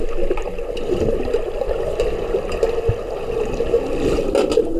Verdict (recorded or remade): recorded